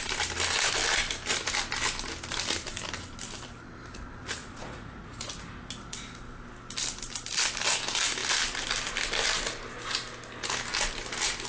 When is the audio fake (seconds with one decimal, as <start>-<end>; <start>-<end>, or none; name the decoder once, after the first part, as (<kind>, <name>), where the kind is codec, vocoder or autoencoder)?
4.4-5.3 (vocoder, Vocos)